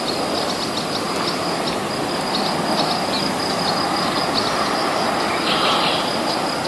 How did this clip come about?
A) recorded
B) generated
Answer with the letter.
A